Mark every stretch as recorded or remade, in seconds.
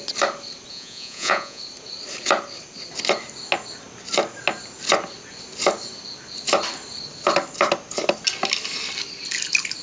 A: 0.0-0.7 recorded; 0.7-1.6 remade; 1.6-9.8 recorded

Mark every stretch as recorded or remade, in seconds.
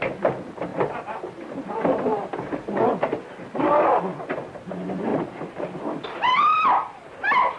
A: 0.0-0.7 recorded; 0.7-2.9 remade; 2.9-5.1 recorded; 5.1-5.6 remade; 5.6-6.5 recorded; 6.5-7.1 remade; 7.1-7.6 recorded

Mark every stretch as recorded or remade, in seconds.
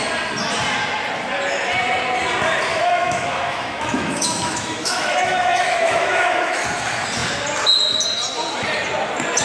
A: 0.0-2.7 recorded; 2.7-6.6 remade; 6.6-9.4 recorded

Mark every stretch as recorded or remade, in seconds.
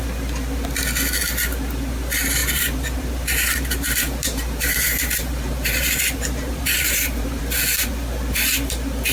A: 0.0-2.4 recorded; 2.4-7.4 remade; 7.4-9.1 recorded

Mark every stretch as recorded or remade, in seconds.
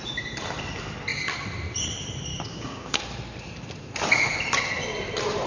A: 0.0-2.3 recorded; 2.3-3.0 remade; 3.0-5.5 recorded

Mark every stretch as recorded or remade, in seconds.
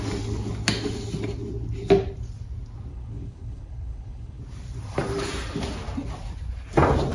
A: 0.0-2.9 recorded; 2.9-4.4 remade; 4.4-7.1 recorded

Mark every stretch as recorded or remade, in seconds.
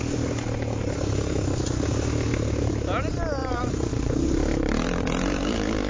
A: 0.0-3.4 recorded; 3.4-5.9 remade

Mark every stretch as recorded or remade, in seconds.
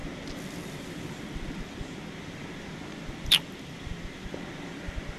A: 0.0-5.2 remade